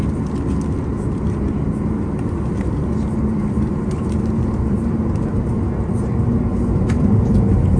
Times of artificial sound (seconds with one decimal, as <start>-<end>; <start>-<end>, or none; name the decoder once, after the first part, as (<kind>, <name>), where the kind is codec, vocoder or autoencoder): 0.9-5.5 (vocoder, BigVGAN v2); 6.5-7.8